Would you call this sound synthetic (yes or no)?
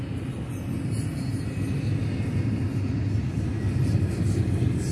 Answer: no